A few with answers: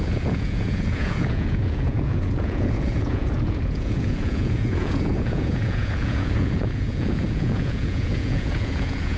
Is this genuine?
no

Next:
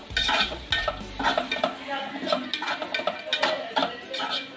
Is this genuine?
yes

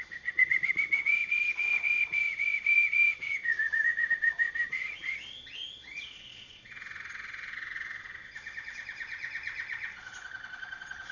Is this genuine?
no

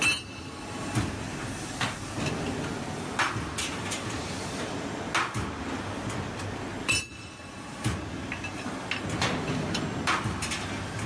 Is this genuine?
yes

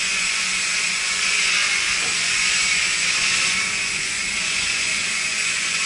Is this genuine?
no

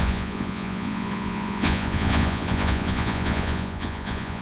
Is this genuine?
no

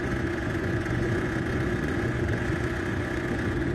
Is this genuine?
no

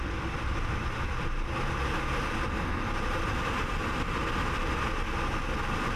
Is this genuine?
yes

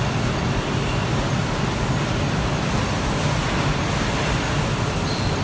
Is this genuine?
yes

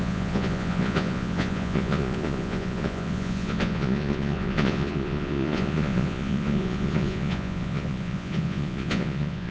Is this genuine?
no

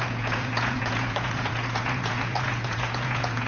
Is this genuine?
no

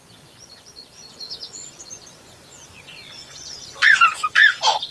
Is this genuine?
no